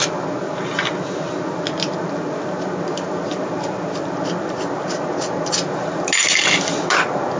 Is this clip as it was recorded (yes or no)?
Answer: yes